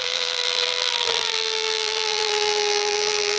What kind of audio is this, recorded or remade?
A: remade